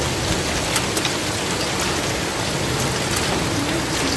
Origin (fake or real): real